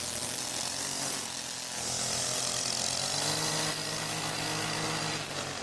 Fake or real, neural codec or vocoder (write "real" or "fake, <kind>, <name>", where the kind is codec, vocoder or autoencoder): real